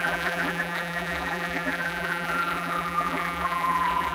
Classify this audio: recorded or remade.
remade